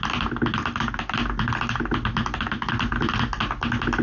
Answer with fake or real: real